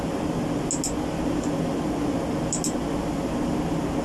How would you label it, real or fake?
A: real